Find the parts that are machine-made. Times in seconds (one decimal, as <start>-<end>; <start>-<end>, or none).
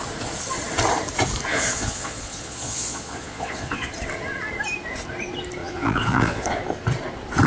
1.5-3.9; 5.6-6.6